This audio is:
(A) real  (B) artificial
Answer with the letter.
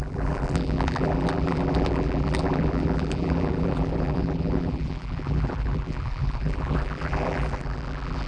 B